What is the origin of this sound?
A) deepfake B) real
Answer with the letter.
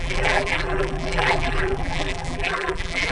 A